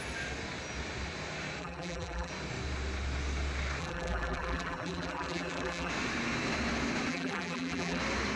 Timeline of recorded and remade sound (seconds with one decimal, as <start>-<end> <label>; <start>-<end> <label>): 0.0-1.6 recorded; 1.6-2.3 remade; 2.3-3.8 recorded; 3.8-5.9 remade; 5.9-7.1 recorded; 7.1-8.0 remade; 8.0-8.4 recorded